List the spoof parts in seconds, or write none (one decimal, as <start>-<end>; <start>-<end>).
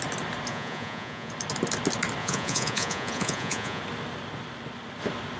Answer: 0.5-1.3; 2.2-3.8